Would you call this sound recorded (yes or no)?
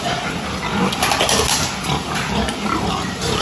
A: yes